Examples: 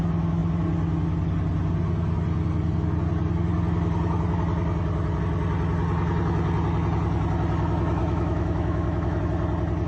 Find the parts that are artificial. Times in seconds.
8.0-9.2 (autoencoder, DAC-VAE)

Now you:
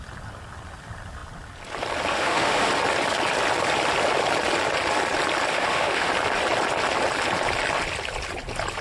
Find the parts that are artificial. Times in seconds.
2.1-2.7 (autoencoder, DAC-VAE); 5.5-6.1

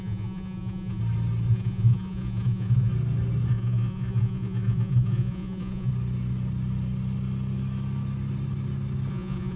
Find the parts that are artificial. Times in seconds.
0.0-1.0 (vocoder, Vocos); 1.5-2.9; 3.5-5.9; 9.1-9.6

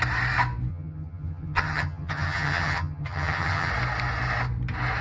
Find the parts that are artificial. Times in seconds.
0.7-3.7 (vocoder, HiFi-GAN)

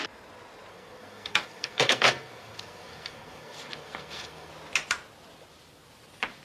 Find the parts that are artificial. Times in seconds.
0.7-4.5 (codec, SNAC)

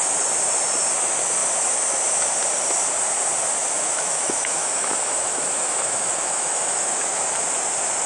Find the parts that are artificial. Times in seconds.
3.6-7.4 (autoencoder, DAC-VAE)